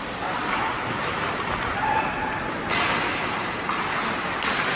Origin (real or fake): real